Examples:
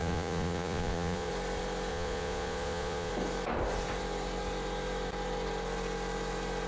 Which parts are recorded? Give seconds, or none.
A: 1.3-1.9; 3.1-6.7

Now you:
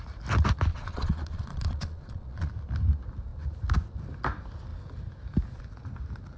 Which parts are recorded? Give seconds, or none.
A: 0.0-0.7; 2.5-6.4

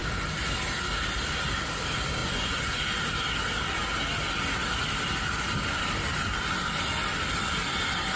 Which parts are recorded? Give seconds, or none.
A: 0.0-2.2; 2.8-8.2

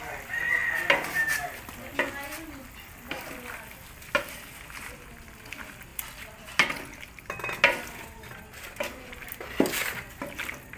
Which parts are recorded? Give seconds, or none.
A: 0.0-10.8

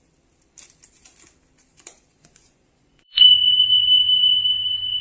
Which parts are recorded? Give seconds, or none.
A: 0.0-1.7

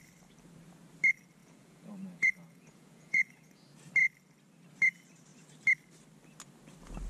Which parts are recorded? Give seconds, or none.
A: 0.0-1.4; 3.6-7.1

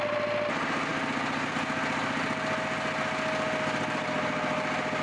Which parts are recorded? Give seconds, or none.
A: 0.0-5.0

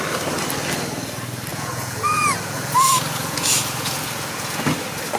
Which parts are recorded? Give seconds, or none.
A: 0.0-1.5; 4.6-5.2